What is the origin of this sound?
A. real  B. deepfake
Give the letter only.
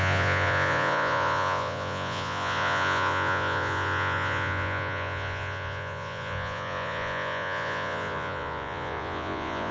B